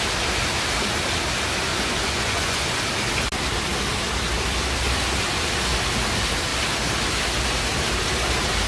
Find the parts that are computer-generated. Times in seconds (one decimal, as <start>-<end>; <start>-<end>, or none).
1.7-2.8